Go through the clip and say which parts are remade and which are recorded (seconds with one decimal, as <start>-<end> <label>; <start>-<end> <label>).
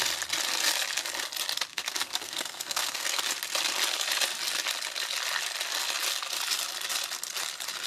0.0-1.7 recorded; 1.7-3.2 remade; 3.2-7.9 recorded